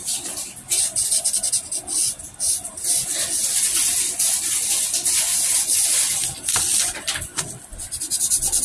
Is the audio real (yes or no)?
yes